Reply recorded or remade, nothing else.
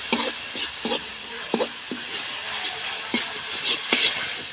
recorded